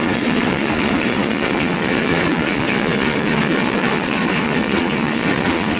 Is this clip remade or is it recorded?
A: remade